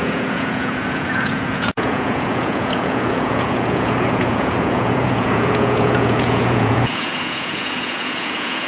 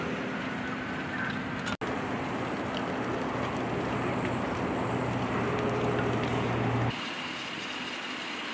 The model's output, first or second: first